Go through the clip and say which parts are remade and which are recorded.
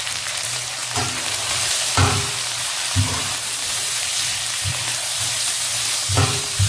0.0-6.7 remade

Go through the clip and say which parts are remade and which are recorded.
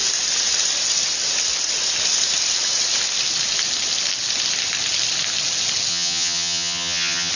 0.0-5.9 recorded; 5.9-7.3 remade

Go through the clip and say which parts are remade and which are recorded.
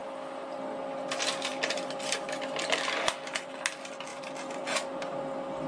0.0-4.1 recorded; 4.1-5.2 remade; 5.2-5.7 recorded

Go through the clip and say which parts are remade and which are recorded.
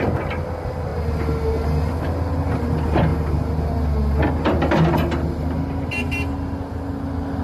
0.0-7.4 recorded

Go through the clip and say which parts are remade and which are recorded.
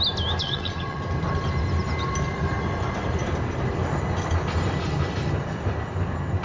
0.0-0.4 recorded; 0.4-1.0 remade; 1.0-6.4 recorded